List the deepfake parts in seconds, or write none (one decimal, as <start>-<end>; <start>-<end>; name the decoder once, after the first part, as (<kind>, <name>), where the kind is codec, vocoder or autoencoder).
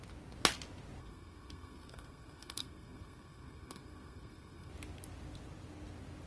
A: 1.0-4.7 (codec, SNAC)